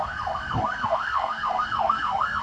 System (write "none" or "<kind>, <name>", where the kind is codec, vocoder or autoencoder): codec, SNAC